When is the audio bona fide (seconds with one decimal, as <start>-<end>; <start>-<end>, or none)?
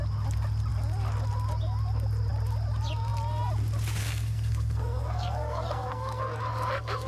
0.0-4.0